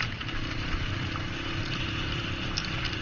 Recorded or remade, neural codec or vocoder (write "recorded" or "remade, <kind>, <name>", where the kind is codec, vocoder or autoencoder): recorded